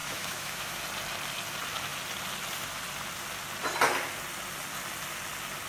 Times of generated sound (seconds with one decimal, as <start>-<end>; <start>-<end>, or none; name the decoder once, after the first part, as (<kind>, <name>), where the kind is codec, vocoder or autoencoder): 0.0-0.8 (autoencoder, DAC-VAE)